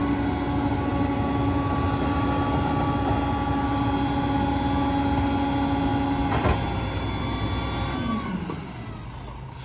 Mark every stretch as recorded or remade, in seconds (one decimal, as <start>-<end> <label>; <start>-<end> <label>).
0.0-9.6 recorded